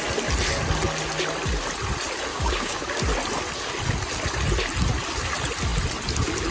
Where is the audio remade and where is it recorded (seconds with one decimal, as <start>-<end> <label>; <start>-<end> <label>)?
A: 0.0-2.3 recorded; 2.3-2.8 remade; 2.8-6.5 recorded